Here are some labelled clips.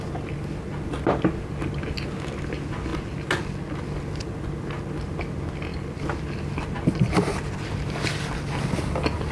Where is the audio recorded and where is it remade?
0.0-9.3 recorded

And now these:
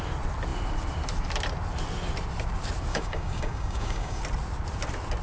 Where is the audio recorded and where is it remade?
0.0-2.9 recorded; 2.9-4.2 remade; 4.2-5.2 recorded

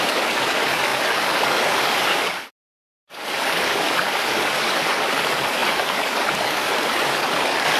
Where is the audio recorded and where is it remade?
0.0-7.8 remade